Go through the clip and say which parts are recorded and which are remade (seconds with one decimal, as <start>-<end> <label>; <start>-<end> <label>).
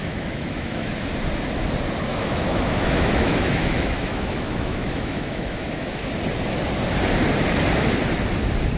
0.0-1.1 remade; 1.1-2.1 recorded; 2.1-6.1 remade; 6.1-8.8 recorded